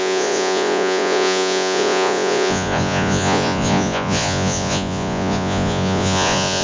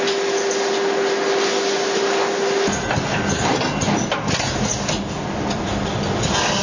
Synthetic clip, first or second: first